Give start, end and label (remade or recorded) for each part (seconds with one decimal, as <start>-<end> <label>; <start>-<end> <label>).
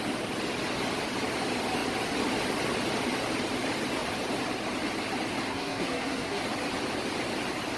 0.0-5.5 recorded; 5.5-6.4 remade; 6.4-7.8 recorded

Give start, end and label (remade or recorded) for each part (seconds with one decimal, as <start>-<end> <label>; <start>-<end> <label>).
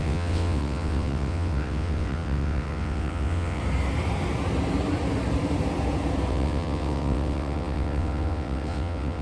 0.0-3.6 remade; 3.6-6.3 recorded; 6.3-9.2 remade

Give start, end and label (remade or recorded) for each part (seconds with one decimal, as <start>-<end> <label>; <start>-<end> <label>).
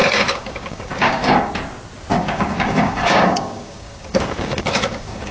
0.0-1.5 remade; 1.5-2.1 recorded; 2.1-5.3 remade